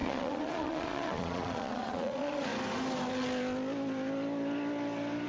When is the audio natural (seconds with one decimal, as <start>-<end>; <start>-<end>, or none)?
2.5-5.3